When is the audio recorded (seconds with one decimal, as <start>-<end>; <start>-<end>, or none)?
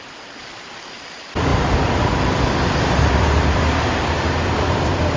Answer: none